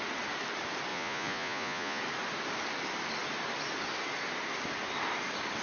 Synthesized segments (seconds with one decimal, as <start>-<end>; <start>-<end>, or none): 0.9-2.0